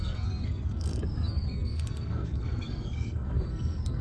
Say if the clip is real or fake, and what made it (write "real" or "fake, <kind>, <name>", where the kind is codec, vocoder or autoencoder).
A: fake, codec, SNAC